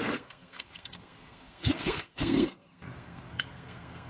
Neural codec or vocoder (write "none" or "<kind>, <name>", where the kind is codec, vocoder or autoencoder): codec, SNAC